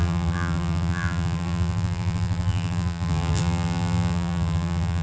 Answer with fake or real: fake